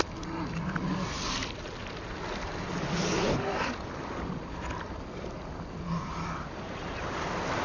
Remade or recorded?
recorded